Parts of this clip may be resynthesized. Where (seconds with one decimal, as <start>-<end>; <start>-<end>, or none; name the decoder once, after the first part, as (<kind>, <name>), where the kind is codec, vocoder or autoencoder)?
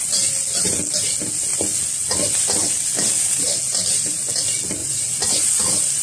4.8-5.5 (vocoder, Vocos)